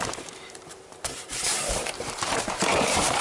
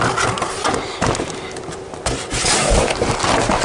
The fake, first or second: first